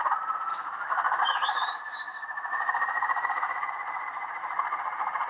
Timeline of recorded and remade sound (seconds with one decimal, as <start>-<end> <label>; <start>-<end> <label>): 0.0-0.5 recorded; 0.5-1.2 remade; 1.2-2.1 recorded; 2.1-3.7 remade; 3.7-5.3 recorded